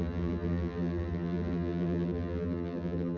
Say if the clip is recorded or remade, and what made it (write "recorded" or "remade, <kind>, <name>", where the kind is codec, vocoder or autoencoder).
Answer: remade, vocoder, BigVGAN v2